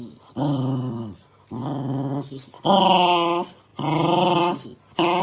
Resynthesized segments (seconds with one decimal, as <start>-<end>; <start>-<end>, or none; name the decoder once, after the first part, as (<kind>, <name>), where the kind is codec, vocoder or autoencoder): none